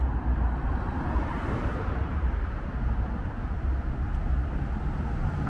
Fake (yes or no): no